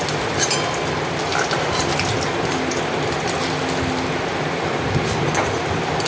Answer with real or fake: real